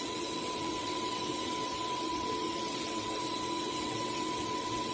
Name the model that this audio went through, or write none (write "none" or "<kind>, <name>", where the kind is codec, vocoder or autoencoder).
vocoder, WaveNeXt